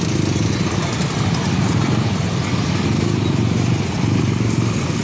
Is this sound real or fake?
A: real